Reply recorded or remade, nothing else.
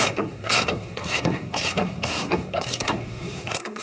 remade